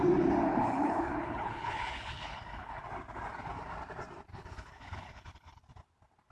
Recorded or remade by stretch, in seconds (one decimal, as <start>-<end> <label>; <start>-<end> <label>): 0.0-0.5 recorded; 0.5-2.8 remade; 2.8-4.3 recorded; 4.3-5.6 remade; 5.6-6.3 recorded